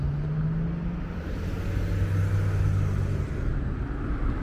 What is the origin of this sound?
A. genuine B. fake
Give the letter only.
A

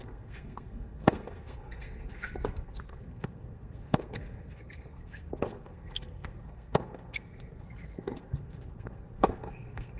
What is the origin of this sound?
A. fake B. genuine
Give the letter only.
A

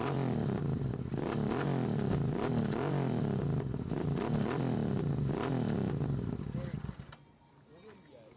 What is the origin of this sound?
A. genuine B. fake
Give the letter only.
A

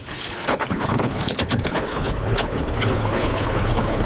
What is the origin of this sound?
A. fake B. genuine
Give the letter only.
A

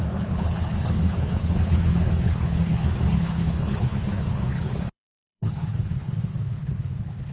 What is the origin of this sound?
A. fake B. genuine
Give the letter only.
A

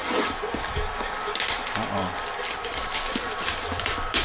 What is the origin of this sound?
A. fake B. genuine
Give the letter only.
A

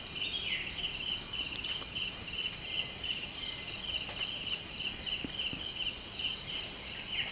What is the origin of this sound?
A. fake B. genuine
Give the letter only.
B